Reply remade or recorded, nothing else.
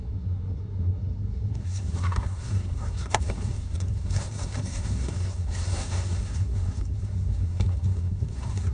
remade